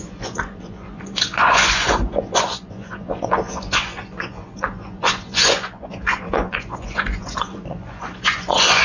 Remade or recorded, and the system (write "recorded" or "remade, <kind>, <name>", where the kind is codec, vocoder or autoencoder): remade, vocoder, Vocos